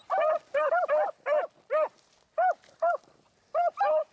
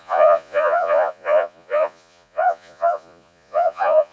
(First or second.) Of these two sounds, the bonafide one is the first